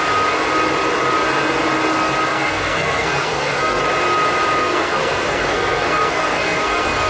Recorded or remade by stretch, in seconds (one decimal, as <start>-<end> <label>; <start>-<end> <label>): 0.0-2.3 recorded; 2.3-3.8 remade; 3.8-4.6 recorded; 4.6-7.1 remade